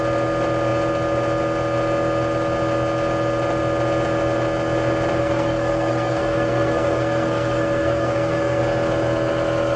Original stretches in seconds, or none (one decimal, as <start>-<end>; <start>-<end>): 0.0-5.2; 8.6-9.8